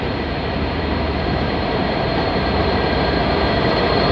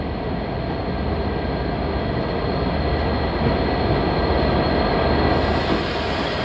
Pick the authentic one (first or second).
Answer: second